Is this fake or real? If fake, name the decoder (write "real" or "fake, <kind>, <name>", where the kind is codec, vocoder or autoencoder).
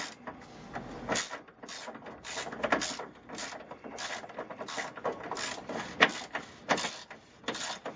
real